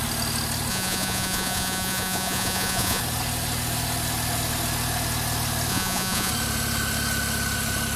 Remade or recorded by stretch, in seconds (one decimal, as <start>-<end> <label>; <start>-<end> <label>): 0.0-0.7 recorded; 0.7-3.0 remade; 3.0-5.7 recorded; 5.7-6.3 remade; 6.3-8.0 recorded